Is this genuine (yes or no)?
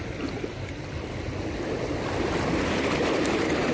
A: yes